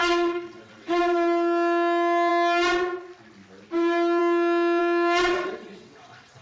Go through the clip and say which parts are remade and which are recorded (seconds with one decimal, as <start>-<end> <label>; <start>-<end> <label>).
0.0-1.0 remade; 1.0-4.8 recorded; 4.8-6.4 remade